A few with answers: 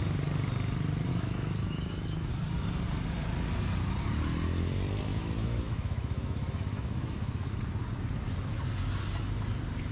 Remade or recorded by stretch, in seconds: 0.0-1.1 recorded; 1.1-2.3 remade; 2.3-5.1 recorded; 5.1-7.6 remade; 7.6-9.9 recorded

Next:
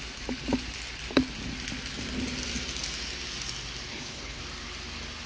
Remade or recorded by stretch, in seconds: 0.0-3.9 recorded; 3.9-4.4 remade; 4.4-5.3 recorded